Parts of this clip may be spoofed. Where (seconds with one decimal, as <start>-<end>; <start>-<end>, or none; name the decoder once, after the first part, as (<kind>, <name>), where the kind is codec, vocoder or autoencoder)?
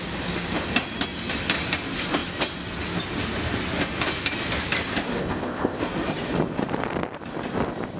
5.2-5.8 (codec, ZipCodec)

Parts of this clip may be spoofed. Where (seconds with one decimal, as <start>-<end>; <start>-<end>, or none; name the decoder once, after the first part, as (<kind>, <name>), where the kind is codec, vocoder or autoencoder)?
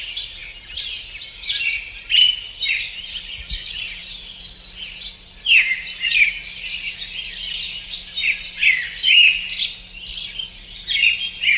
none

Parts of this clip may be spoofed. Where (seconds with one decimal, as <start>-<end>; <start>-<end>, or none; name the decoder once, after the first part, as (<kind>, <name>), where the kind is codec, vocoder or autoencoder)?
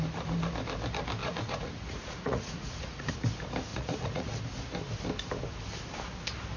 1.2-3.1 (vocoder, Vocos); 3.7-4.4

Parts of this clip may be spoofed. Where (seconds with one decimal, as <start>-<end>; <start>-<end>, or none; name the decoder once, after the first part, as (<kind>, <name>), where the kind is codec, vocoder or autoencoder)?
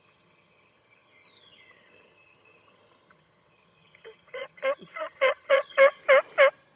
0.0-6.0 (vocoder, HiFi-GAN)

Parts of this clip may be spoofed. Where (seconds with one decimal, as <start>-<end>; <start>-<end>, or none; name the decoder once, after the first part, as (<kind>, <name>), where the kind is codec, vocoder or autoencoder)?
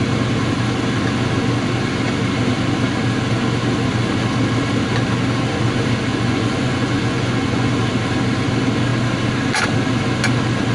6.1-7.7 (vocoder, Vocos)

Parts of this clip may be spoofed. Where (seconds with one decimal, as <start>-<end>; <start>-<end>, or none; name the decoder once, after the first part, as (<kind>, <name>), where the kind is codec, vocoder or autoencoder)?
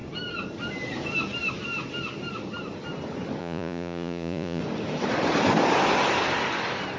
3.4-4.6 (vocoder, Vocos)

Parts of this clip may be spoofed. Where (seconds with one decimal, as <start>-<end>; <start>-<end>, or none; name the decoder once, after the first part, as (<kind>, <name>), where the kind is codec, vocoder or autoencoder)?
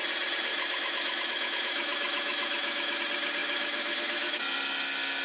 0.5-3.0 (autoencoder, DAC-VAE); 3.4-4.4